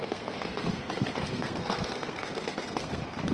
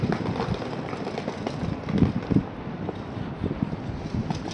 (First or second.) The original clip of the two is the second